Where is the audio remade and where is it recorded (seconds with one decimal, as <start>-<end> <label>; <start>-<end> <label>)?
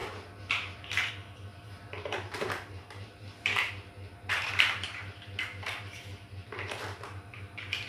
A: 0.0-7.9 remade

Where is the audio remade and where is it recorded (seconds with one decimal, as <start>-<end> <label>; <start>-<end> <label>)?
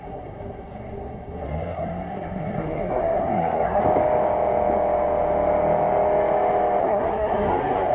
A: 0.0-3.8 remade; 3.8-6.8 recorded; 6.8-7.9 remade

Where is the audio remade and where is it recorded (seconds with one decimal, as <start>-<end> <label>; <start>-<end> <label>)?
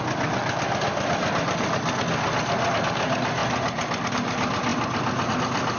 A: 0.0-5.8 recorded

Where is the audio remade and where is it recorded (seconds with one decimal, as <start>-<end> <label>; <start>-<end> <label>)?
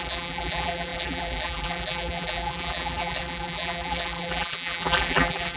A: 0.0-5.6 remade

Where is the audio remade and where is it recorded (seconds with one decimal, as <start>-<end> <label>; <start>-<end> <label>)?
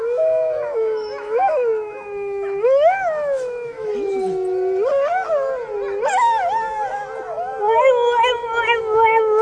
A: 0.0-3.9 remade; 3.9-8.8 recorded; 8.8-9.4 remade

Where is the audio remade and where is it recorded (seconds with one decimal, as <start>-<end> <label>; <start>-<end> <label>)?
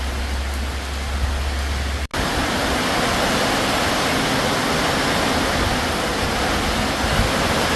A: 0.0-7.8 recorded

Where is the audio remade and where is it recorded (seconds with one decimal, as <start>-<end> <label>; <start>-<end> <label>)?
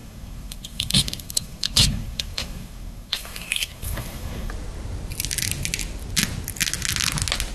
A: 0.0-4.5 remade; 4.5-7.5 recorded